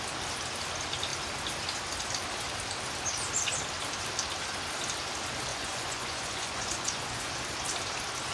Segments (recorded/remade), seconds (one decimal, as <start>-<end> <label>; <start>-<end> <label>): 0.0-5.5 recorded; 5.5-7.3 remade; 7.3-8.3 recorded